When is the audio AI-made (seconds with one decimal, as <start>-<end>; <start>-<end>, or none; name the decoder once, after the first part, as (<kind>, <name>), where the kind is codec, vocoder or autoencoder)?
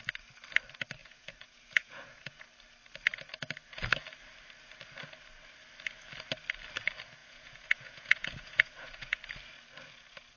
1.0-2.5 (vocoder, Vocos); 7.2-9.2